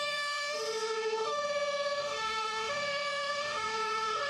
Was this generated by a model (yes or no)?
yes